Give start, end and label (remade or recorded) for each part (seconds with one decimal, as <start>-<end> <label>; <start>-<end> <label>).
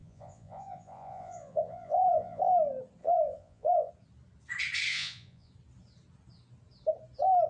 0.0-2.4 remade; 2.4-3.0 recorded; 3.0-3.9 remade; 3.9-4.9 recorded; 4.9-5.5 remade; 5.5-7.5 recorded